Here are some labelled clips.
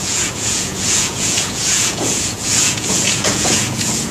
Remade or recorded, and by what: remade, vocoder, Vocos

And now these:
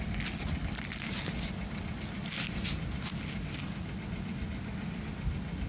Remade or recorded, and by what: recorded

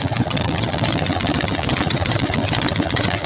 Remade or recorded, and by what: remade, vocoder, Vocos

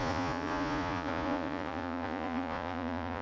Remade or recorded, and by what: remade, vocoder, Vocos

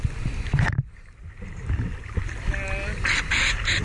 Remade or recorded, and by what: recorded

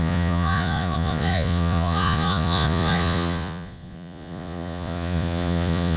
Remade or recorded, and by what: remade, vocoder, Vocos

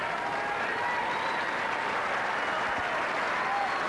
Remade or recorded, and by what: recorded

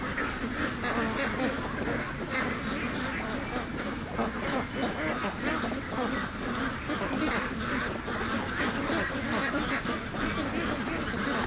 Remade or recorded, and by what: recorded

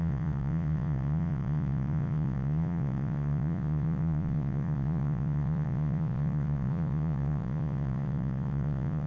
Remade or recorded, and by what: remade, vocoder, Vocos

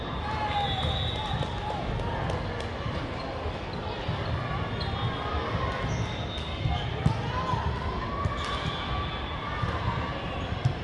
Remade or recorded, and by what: recorded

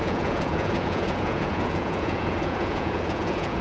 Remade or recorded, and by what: remade, vocoder, Vocos